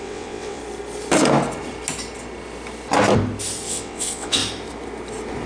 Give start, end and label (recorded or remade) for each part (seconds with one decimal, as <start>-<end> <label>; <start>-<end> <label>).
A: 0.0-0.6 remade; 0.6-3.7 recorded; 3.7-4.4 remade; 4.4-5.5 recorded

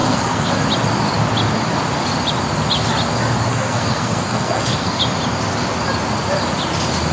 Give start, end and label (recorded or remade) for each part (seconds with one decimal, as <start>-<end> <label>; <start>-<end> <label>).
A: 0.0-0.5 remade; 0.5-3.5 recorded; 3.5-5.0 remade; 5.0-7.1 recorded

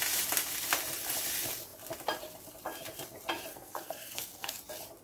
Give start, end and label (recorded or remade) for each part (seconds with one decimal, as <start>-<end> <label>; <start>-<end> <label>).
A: 0.0-3.5 recorded; 3.5-4.6 remade; 4.6-5.0 recorded